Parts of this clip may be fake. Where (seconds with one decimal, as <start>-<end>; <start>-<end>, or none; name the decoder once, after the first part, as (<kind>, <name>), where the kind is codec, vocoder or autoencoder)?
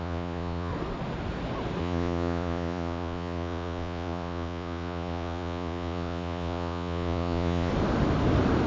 0.0-0.7 (vocoder, Vocos); 1.8-7.7